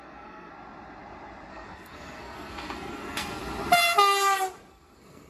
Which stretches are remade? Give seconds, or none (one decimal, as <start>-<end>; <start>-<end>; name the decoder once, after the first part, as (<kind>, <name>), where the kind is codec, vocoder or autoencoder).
0.0-0.5 (codec, SNAC); 1.5-3.4; 4.7-5.3